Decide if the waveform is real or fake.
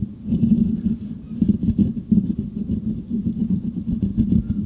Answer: real